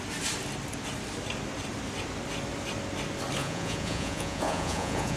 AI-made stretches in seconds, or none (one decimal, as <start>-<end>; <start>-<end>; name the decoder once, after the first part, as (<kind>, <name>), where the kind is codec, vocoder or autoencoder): 3.4-5.2 (vocoder, Vocos)